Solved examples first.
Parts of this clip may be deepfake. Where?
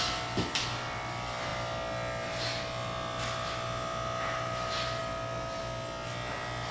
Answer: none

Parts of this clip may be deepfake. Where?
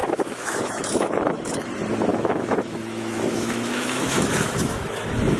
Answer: 0.0-1.7 (autoencoder, DAC-VAE); 2.1-5.4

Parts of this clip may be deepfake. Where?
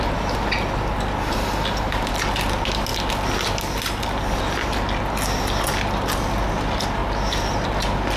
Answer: none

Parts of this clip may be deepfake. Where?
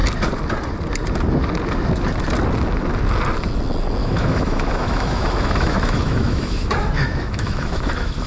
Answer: 4.0-8.3 (autoencoder, DAC-VAE)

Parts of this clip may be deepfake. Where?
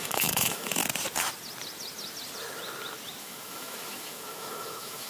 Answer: 0.0-0.8 (autoencoder, DAC-VAE); 3.2-5.1